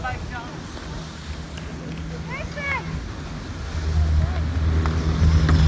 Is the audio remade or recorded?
recorded